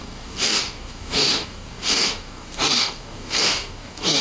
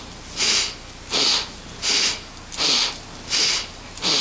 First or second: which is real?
second